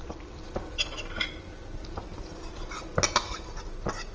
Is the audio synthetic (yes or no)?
no